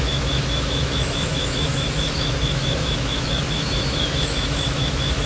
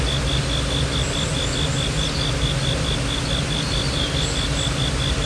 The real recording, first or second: second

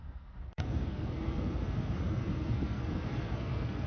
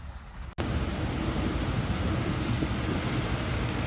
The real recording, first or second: second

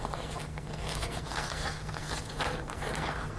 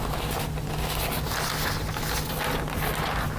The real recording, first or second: second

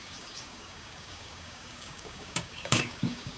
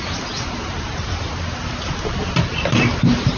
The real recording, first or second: second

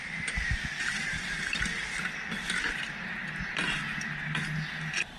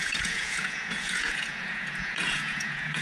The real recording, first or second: first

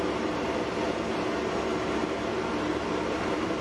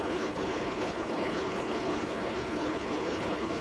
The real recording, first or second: first